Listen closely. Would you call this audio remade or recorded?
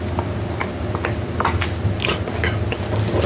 recorded